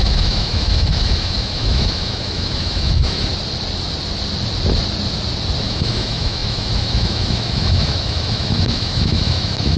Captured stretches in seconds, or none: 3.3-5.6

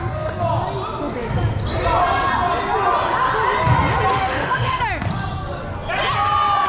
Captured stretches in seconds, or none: 0.0-4.1; 4.8-6.7

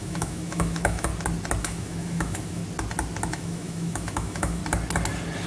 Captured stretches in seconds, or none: 1.1-1.6; 2.6-3.3; 4.6-5.5

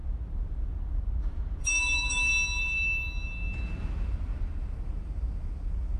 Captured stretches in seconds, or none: 0.0-1.6; 2.3-6.0

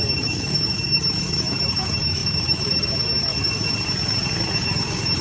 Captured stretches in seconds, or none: 3.3-4.6

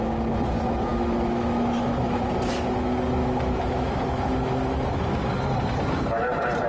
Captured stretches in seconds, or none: 0.0-0.9; 2.2-3.2; 5.3-6.7